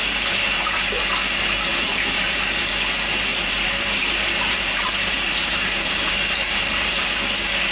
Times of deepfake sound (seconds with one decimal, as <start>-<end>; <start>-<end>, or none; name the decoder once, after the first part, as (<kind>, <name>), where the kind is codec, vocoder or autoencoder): 0.0-1.0 (vocoder, BigVGAN v2); 1.7-2.7; 3.3-7.1